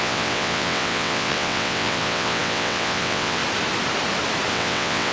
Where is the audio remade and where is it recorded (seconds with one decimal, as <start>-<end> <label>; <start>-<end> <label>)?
0.0-3.4 remade; 3.4-4.5 recorded; 4.5-5.1 remade